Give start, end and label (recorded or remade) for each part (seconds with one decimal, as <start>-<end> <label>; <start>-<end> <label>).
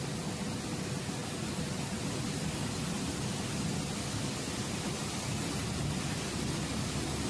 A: 0.0-7.3 recorded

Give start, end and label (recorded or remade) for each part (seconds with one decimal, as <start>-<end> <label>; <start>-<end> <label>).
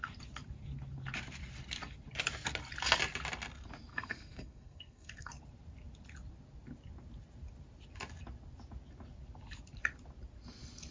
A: 0.0-3.9 recorded; 3.9-5.3 remade; 5.3-10.9 recorded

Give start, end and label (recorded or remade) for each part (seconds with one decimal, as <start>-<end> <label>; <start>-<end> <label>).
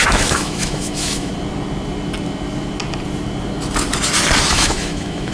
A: 0.0-1.3 remade; 1.3-4.5 recorded; 4.5-5.3 remade